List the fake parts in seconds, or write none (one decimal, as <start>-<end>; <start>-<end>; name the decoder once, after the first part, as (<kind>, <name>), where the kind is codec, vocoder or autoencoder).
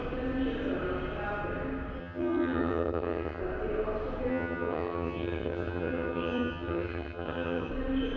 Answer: 2.0-3.4 (vocoder, HiFi-GAN); 4.3-7.7